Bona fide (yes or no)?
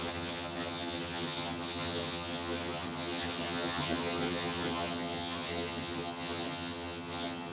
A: no